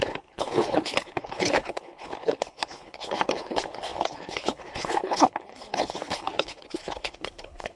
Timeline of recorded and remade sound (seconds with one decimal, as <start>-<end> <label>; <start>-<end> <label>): 0.0-7.8 remade